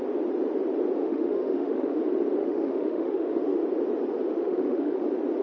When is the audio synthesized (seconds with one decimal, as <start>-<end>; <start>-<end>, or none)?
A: 1.0-2.0; 2.4-3.6; 4.3-5.0